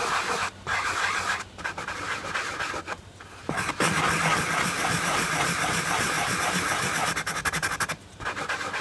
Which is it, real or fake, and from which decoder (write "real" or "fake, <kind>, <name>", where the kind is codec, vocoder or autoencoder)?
real